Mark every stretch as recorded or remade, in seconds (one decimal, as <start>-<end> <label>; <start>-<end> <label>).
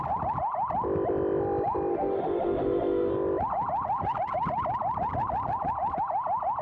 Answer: 0.0-1.9 recorded; 1.9-3.1 remade; 3.1-6.6 recorded